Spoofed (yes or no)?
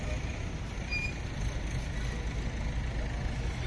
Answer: no